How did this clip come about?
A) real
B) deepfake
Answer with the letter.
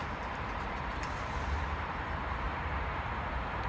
B